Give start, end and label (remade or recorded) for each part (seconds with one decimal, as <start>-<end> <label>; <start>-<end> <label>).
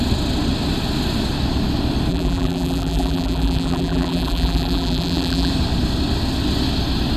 0.0-2.1 recorded; 2.1-5.5 remade; 5.5-7.2 recorded